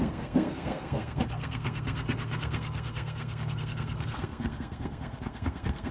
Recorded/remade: remade